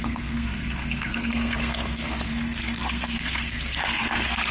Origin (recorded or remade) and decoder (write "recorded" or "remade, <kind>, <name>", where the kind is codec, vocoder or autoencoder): remade, codec, SNAC